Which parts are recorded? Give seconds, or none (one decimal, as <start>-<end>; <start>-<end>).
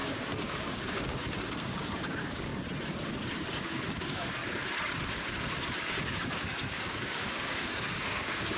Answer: 2.5-3.2; 4.4-5.8